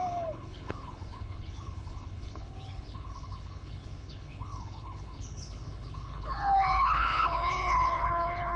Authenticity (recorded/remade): remade